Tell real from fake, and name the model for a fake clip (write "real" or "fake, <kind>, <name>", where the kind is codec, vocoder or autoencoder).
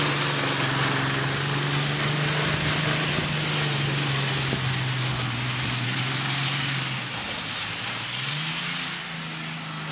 real